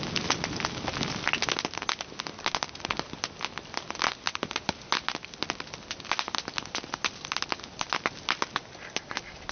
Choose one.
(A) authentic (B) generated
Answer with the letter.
A